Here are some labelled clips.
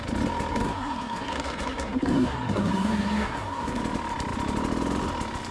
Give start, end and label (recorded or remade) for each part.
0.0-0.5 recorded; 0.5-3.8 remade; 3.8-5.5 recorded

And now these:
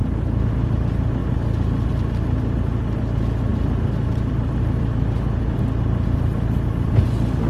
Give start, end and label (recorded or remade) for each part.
0.0-7.5 recorded

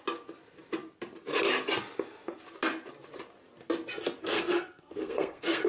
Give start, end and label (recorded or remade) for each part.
0.0-4.2 recorded; 4.2-5.7 remade